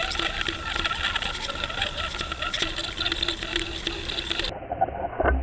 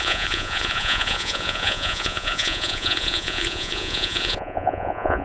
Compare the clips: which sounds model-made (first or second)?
second